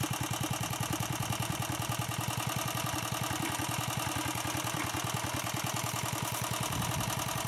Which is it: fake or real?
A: real